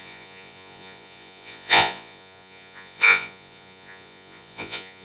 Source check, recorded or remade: remade